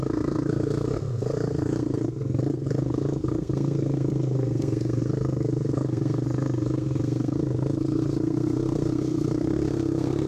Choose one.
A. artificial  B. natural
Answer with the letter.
A